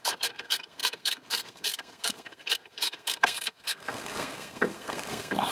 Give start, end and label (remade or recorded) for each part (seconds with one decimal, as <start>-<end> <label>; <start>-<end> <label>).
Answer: 0.0-5.5 remade